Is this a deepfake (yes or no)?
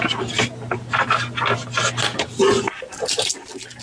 no